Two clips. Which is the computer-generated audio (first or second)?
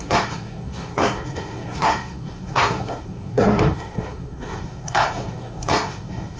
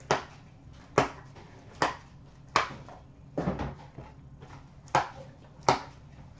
first